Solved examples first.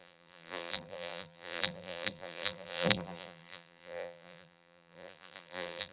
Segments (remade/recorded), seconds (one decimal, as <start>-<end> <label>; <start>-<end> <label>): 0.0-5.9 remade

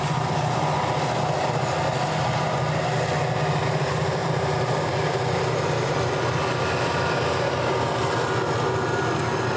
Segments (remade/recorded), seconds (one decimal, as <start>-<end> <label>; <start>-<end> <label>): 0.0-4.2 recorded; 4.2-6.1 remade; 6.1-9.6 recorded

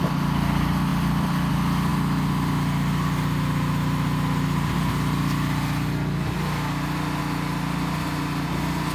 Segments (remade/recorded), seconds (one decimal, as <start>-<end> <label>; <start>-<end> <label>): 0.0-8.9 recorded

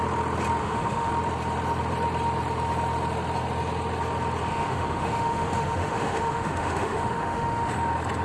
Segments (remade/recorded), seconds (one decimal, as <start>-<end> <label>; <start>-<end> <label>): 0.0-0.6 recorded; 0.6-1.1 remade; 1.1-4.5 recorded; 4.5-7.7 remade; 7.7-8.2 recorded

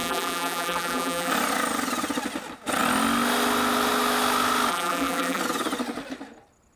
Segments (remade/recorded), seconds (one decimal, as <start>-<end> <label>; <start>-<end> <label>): 0.0-1.3 remade; 1.3-4.7 recorded; 4.7-5.4 remade; 5.4-6.8 recorded

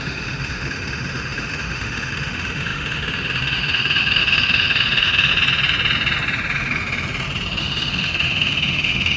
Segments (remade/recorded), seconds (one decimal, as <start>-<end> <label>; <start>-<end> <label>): 0.0-5.3 remade; 5.3-7.6 recorded; 7.6-9.2 remade

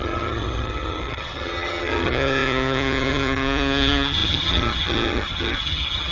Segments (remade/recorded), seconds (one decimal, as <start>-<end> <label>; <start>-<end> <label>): 0.0-6.1 remade